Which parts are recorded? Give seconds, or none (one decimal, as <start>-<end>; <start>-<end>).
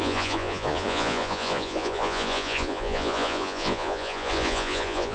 none